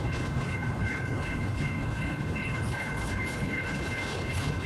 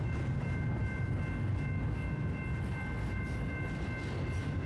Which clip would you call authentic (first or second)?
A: second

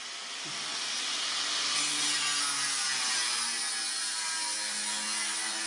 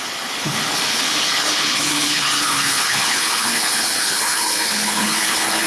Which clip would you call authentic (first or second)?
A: first